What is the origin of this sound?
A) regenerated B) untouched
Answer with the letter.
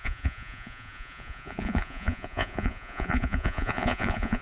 A